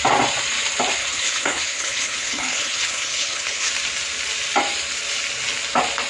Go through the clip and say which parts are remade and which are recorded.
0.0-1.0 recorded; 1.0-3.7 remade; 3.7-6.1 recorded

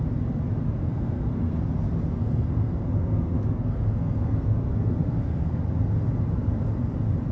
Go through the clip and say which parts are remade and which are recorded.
0.0-0.8 recorded; 0.8-1.6 remade; 1.6-2.2 recorded; 2.2-5.6 remade; 5.6-7.3 recorded

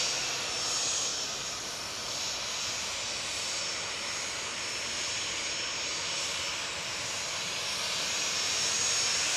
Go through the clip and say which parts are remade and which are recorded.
0.0-1.1 recorded; 1.1-2.0 remade; 2.0-9.4 recorded

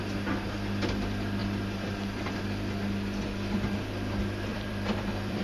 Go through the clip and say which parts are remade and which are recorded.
0.0-4.5 recorded; 4.5-5.4 remade

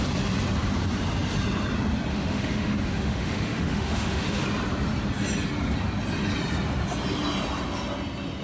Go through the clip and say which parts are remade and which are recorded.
0.0-2.1 recorded; 2.1-4.4 remade; 4.4-8.4 recorded

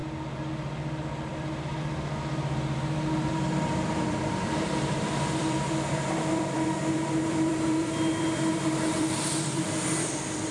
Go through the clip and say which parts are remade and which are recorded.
0.0-3.3 recorded; 3.3-10.5 remade